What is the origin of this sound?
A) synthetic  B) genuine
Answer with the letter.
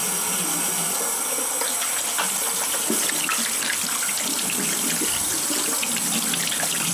B